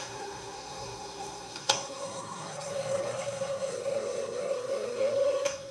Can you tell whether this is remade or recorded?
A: remade